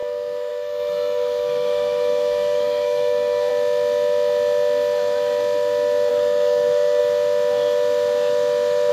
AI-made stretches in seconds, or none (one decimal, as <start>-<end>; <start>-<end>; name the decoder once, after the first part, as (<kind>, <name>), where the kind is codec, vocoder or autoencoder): 0.0-3.5 (codec, SNAC); 6.1-7.0